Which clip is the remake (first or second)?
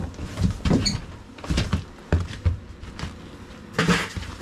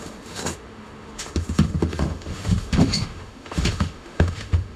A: second